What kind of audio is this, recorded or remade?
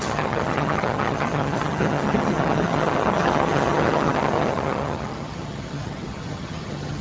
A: remade